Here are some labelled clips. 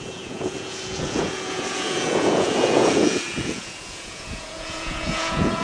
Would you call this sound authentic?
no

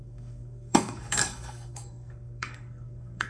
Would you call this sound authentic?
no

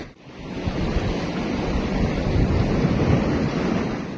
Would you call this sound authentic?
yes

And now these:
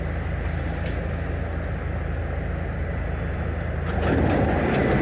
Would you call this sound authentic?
yes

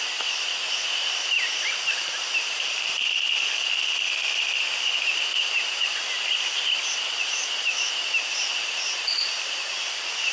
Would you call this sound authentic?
no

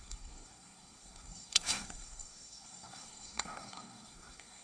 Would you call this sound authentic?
no